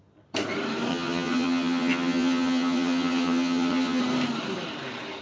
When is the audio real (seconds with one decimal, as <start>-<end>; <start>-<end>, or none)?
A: 0.0-0.9; 4.0-5.2